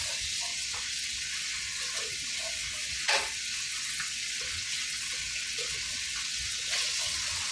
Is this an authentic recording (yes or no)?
no